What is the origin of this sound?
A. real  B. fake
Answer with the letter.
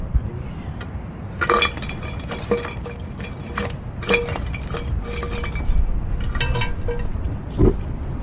A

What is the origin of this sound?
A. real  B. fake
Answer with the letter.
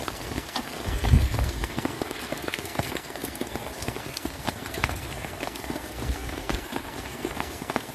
B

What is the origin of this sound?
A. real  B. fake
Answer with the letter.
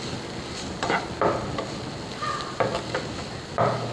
A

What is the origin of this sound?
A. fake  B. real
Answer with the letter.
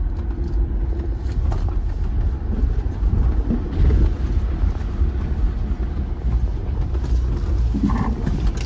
B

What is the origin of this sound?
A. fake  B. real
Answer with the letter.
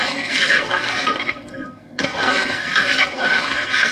A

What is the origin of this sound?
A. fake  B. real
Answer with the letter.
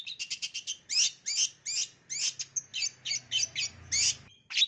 B